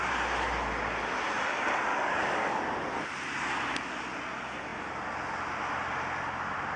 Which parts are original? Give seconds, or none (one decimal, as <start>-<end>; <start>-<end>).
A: 0.0-1.9; 2.6-6.8